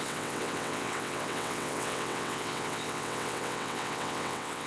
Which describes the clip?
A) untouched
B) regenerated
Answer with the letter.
B